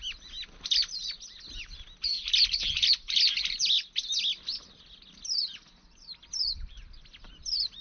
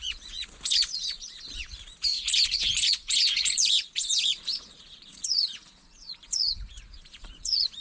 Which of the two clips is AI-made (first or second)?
second